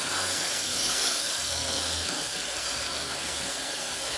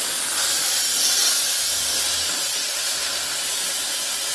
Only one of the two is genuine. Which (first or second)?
second